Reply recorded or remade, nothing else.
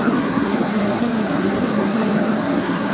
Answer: remade